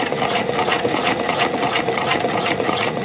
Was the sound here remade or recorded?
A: remade